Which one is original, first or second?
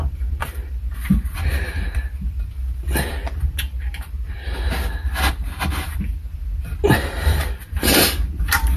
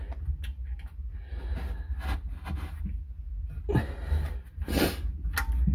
second